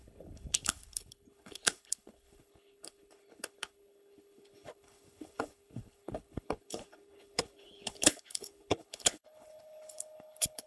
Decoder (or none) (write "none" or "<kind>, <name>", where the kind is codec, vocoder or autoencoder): codec, HILCodec